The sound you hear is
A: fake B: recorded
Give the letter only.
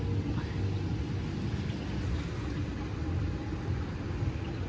B